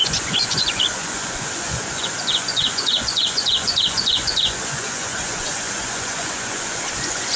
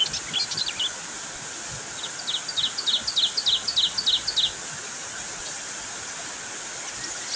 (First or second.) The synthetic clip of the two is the first